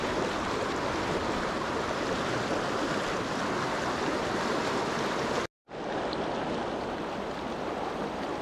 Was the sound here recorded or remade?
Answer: recorded